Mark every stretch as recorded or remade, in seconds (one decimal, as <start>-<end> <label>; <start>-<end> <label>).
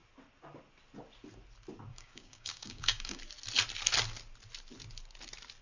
0.0-1.9 recorded; 1.9-3.2 remade; 3.2-5.6 recorded